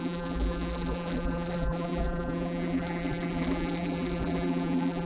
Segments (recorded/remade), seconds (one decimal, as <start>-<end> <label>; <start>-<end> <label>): 0.0-5.1 remade